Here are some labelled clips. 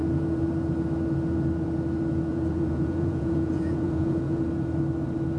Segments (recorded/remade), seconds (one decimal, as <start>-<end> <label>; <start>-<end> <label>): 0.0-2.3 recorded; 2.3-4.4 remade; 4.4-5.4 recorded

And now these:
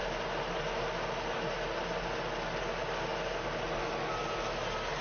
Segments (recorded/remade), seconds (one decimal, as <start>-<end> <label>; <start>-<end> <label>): 0.0-5.0 recorded

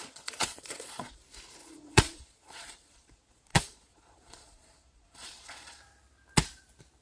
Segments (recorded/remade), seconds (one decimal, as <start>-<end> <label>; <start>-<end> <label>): 0.0-1.2 remade; 1.2-1.6 recorded; 1.6-5.8 remade; 5.8-7.0 recorded